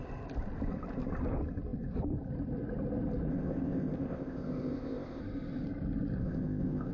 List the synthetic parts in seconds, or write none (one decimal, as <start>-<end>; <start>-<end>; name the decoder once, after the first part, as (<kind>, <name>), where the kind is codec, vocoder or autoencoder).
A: 3.3-5.2 (codec, ZipCodec); 6.2-6.9